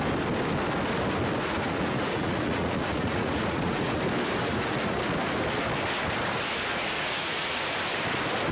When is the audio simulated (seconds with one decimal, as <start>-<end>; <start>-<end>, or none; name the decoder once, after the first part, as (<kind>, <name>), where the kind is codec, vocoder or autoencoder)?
1.4-4.0 (vocoder, Vocos); 4.5-5.0; 6.7-7.7